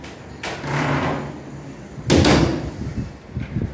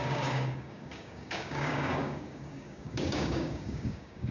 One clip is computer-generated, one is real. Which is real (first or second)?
first